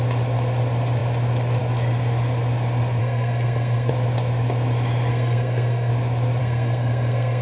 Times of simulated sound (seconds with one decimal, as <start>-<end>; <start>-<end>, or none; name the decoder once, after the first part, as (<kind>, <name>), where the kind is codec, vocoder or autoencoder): 3.0-3.9 (codec, SNAC); 5.1-5.9; 6.4-7.4